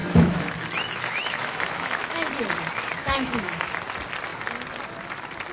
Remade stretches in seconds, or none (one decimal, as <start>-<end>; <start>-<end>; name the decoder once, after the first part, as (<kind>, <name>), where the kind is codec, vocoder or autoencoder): 0.0-2.3 (autoencoder, DAC-VAE); 3.0-3.7